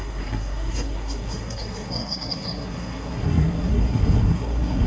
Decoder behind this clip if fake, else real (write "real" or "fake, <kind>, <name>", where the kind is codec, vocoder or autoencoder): fake, codec, SNAC